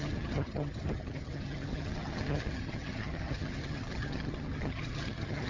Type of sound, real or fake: fake